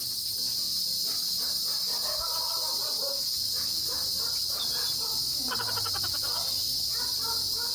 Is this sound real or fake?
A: real